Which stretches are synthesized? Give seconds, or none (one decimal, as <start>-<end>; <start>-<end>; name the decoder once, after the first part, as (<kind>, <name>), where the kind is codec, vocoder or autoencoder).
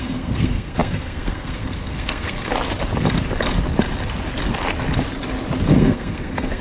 0.0-2.5 (codec, SNAC); 5.7-6.6